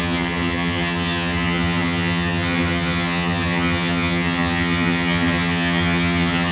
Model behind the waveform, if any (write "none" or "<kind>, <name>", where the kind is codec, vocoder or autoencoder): vocoder, HiFi-GAN